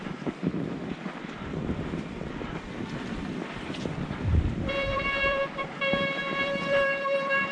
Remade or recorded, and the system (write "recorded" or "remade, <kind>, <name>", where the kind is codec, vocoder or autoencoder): remade, vocoder, BigVGAN v2